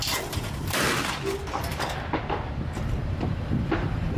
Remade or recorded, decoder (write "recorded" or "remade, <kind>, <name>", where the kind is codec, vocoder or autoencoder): remade, vocoder, BigVGAN v2